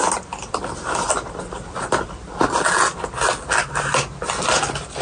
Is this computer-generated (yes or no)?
no